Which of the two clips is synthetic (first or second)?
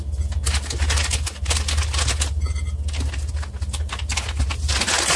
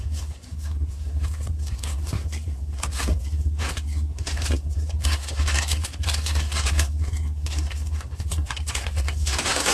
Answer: second